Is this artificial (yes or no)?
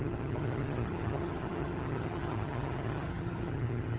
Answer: yes